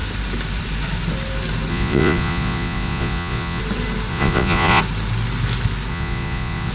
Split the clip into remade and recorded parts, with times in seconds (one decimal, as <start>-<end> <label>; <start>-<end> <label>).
0.0-1.7 recorded; 1.7-3.6 remade; 3.6-4.1 recorded; 4.1-4.8 remade; 4.8-5.9 recorded; 5.9-6.7 remade